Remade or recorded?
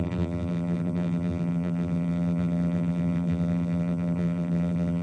remade